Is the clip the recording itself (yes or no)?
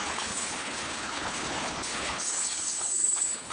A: no